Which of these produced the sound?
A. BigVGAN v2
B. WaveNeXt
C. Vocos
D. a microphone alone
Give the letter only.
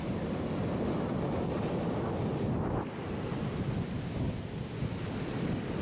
D